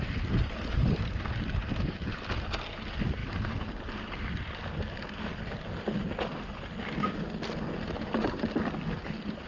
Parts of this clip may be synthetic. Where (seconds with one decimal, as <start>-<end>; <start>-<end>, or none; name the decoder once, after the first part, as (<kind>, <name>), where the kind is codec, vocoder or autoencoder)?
none